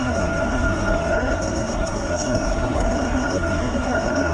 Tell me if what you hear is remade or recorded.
remade